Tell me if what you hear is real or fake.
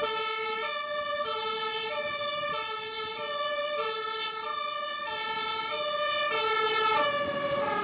real